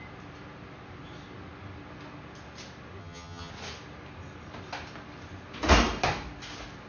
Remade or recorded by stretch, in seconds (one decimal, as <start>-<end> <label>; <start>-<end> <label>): 0.0-3.0 recorded; 3.0-3.5 remade; 3.5-6.9 recorded